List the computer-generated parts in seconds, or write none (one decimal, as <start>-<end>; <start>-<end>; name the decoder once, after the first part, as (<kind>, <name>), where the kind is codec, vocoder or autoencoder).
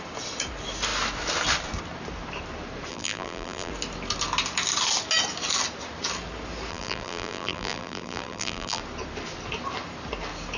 2.9-3.7 (vocoder, BigVGAN v2); 6.7-8.8